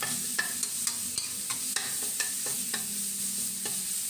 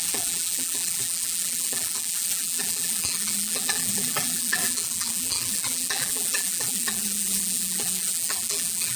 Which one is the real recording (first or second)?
first